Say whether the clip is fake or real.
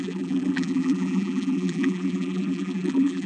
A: fake